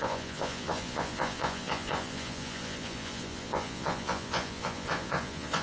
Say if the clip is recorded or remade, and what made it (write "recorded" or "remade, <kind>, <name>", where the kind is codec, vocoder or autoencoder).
remade, vocoder, Vocos